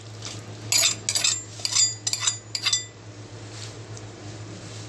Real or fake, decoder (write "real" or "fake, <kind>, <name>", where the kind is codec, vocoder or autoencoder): real